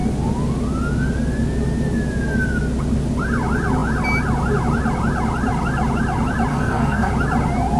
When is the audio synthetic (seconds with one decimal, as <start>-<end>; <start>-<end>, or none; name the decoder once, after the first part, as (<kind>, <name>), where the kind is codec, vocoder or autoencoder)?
6.5-7.1 (codec, SNAC)